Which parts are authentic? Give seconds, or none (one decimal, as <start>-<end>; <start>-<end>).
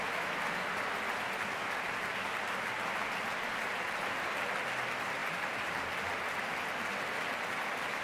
0.0-8.0